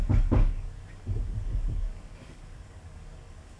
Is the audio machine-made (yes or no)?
yes